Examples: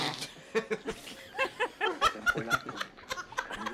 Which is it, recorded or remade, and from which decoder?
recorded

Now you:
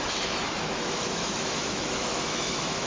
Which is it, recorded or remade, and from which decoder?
remade, autoencoder, DAC-VAE